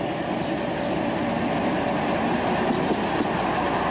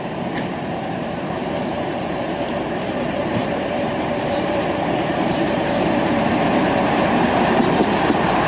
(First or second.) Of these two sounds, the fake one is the second